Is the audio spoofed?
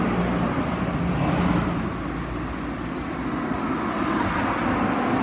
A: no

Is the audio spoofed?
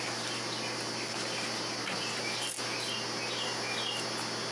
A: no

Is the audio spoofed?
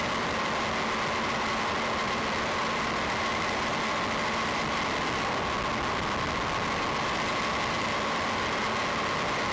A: no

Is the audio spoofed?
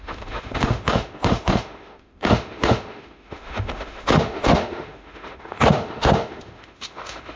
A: yes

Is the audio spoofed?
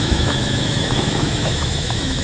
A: yes